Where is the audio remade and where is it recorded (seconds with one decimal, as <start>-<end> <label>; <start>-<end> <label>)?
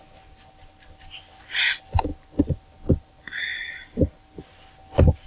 0.0-3.5 recorded; 3.5-4.1 remade; 4.1-5.3 recorded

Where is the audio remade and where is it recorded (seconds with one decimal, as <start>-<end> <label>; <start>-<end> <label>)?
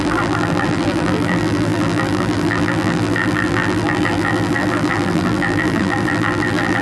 0.0-6.8 remade